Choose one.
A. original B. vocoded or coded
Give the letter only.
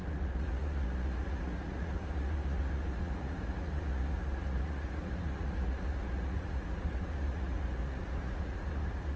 B